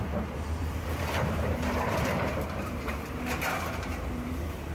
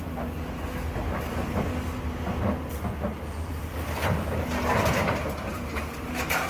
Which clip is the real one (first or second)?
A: second